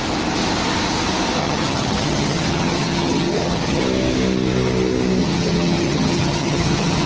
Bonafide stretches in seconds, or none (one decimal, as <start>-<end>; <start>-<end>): 0.0-1.4; 3.8-5.2

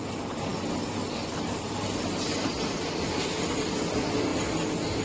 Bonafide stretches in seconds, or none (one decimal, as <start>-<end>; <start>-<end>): 0.0-5.0

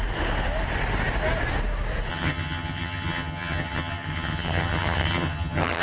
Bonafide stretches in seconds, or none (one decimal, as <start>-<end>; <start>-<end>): 0.0-2.1

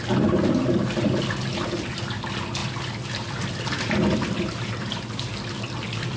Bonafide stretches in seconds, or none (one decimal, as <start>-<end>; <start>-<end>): 0.0-6.2

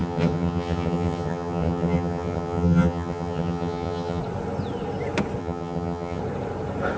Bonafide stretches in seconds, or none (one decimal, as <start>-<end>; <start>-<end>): 4.2-5.4; 6.2-7.0

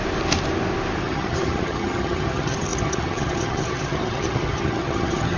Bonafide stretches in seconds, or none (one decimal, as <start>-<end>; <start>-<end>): 0.0-1.0

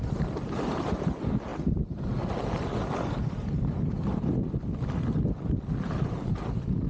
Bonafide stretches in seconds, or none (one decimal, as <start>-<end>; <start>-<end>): 0.0-6.9